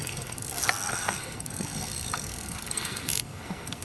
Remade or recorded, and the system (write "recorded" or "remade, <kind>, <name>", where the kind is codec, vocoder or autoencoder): remade, codec, SNAC